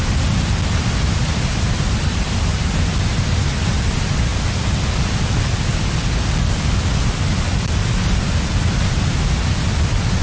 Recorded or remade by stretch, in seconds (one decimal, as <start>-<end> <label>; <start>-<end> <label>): 0.0-10.2 recorded